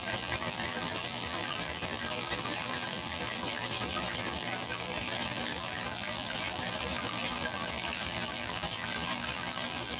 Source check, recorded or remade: remade